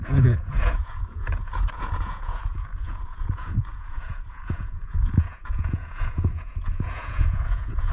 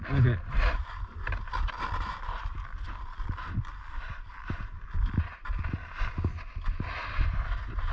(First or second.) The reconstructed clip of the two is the first